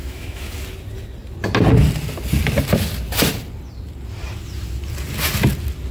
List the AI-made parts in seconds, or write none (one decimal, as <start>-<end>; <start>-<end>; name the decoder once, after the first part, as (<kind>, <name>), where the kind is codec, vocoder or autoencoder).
0.0-0.5 (autoencoder, DAC-VAE)